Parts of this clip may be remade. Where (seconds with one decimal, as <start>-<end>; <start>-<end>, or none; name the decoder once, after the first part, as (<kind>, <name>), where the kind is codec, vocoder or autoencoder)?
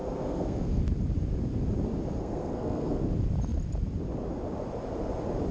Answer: 0.0-0.8 (codec, SNAC); 2.1-3.0